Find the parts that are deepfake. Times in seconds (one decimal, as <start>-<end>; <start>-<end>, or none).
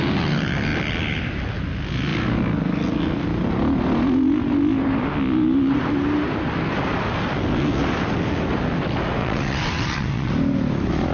9.2-10.3